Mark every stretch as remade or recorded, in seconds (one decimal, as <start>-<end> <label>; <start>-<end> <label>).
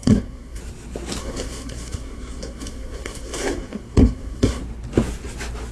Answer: 0.0-0.6 remade; 0.6-1.2 recorded; 1.2-4.6 remade; 4.6-5.7 recorded